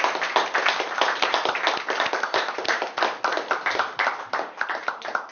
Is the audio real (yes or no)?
yes